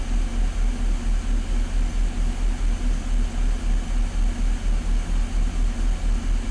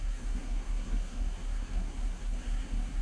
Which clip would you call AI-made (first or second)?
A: second